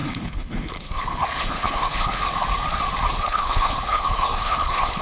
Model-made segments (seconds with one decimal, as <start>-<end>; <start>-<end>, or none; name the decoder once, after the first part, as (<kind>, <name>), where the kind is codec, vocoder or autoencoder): 0.0-2.2 (codec, HILCodec); 3.1-5.0